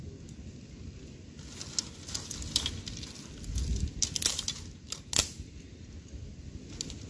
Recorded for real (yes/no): yes